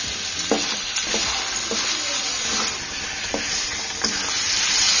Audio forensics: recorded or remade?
recorded